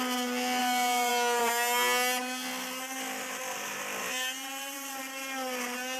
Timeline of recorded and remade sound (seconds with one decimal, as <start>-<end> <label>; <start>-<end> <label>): 0.0-0.6 recorded; 0.6-1.1 remade; 1.1-4.0 recorded; 4.0-4.9 remade; 4.9-6.0 recorded